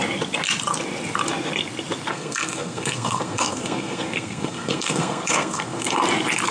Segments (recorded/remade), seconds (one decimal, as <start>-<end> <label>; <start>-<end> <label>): 0.0-2.1 recorded; 2.1-6.0 remade; 6.0-6.5 recorded